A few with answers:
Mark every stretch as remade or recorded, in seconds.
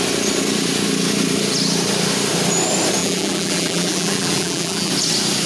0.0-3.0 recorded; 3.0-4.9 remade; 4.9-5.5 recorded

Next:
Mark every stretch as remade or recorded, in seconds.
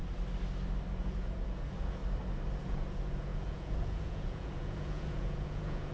0.0-1.0 recorded; 1.0-2.0 remade; 2.0-2.6 recorded; 2.6-5.9 remade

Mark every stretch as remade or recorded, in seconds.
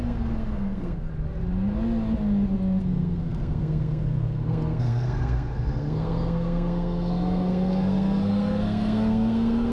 0.0-1.1 remade; 1.1-2.8 recorded; 2.8-9.7 remade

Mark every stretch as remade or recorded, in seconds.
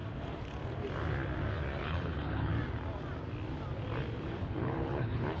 0.0-1.8 recorded; 1.8-2.5 remade; 2.5-4.4 recorded; 4.4-5.4 remade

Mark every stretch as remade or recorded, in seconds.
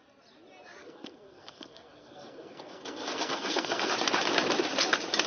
0.0-0.8 recorded; 0.8-3.9 remade; 3.9-5.3 recorded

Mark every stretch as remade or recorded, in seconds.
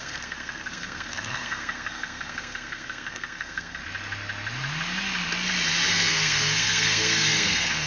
0.0-3.8 remade; 3.8-5.9 recorded; 5.9-7.9 remade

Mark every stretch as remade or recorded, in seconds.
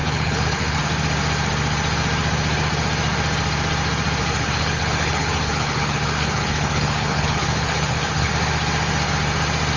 0.0-0.8 remade; 0.8-4.2 recorded; 4.2-8.3 remade; 8.3-9.8 recorded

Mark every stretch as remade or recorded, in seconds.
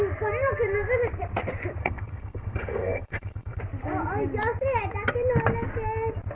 0.0-1.8 recorded; 1.8-3.6 remade; 3.6-6.3 recorded